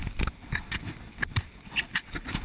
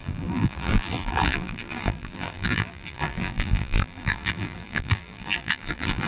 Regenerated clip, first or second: second